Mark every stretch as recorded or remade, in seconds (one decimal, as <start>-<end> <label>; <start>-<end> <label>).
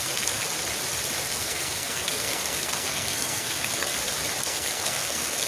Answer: 0.0-0.4 remade; 0.4-1.3 recorded; 1.3-3.9 remade; 3.9-4.4 recorded; 4.4-5.5 remade